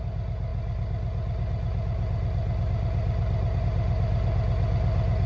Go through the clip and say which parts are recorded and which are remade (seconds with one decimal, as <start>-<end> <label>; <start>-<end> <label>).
0.0-5.3 recorded